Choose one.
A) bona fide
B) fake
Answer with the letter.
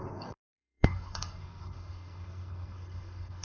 B